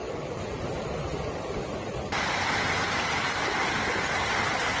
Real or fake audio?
real